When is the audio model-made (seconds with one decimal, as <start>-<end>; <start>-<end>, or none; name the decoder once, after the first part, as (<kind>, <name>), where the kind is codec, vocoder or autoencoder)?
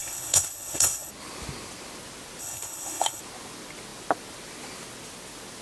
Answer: 0.0-1.1 (codec, HILCodec); 2.4-3.2